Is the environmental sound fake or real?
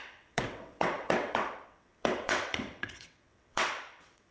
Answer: fake